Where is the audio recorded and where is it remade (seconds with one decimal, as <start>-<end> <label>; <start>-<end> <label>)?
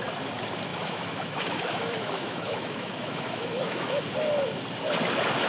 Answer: 0.0-0.7 recorded; 0.7-4.0 remade; 4.0-5.5 recorded